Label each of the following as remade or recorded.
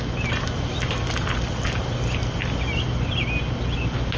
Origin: recorded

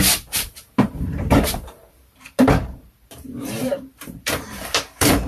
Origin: remade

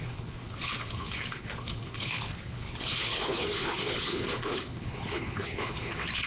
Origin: remade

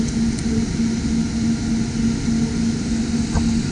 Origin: recorded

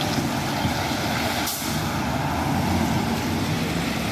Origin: recorded